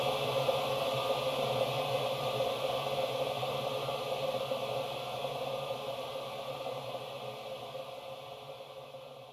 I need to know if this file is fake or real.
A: real